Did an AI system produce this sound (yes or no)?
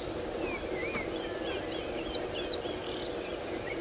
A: no